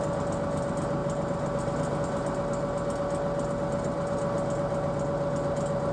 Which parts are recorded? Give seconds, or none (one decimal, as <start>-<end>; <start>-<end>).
0.0-5.9